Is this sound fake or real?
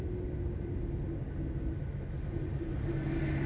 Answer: real